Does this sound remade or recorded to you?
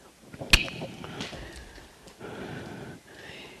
recorded